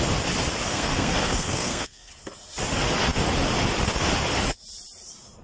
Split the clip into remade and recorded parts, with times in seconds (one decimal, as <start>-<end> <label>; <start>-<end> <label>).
0.0-0.7 recorded; 0.7-2.1 remade; 2.1-5.4 recorded